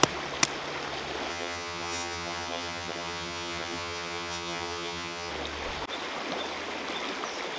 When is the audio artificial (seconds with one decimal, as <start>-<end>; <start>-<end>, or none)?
1.3-5.3